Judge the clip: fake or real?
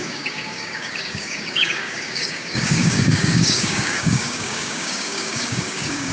fake